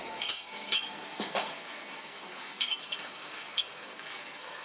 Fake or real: fake